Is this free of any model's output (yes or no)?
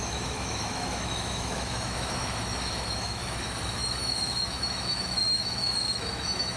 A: no